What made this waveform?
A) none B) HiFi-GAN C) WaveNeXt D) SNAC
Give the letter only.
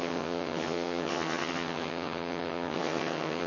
B